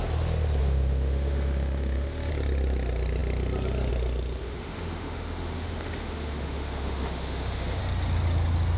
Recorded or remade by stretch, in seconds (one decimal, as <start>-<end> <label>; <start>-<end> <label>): 0.0-0.6 recorded; 0.6-2.3 remade; 2.3-4.4 recorded; 4.4-7.8 remade; 7.8-8.8 recorded